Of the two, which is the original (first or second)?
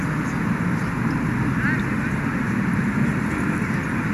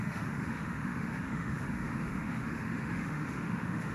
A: first